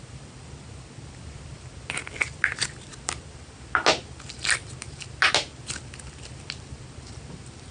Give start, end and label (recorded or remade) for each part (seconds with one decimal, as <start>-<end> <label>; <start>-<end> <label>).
0.0-7.7 recorded